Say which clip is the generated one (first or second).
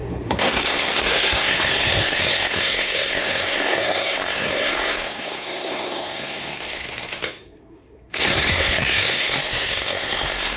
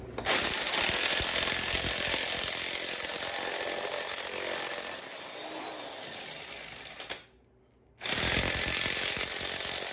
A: first